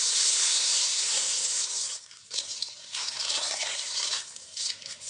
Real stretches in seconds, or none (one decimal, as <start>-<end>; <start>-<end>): none